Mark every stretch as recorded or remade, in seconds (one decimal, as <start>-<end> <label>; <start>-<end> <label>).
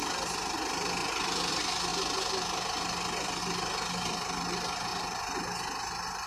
0.0-1.0 recorded; 1.0-1.5 remade; 1.5-4.9 recorded; 4.9-5.4 remade; 5.4-6.3 recorded